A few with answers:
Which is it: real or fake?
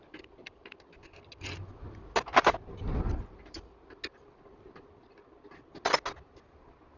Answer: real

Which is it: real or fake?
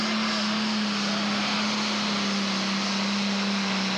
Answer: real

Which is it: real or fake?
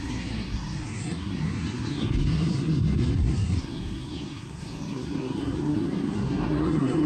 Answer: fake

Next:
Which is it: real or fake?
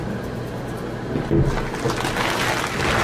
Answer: real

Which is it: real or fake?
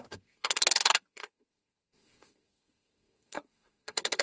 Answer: fake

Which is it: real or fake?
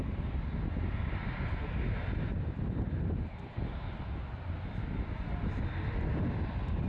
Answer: real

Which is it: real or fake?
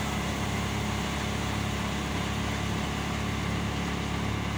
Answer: real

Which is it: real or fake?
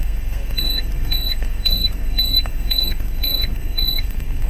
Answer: fake